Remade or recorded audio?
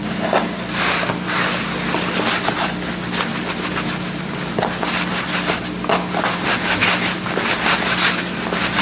recorded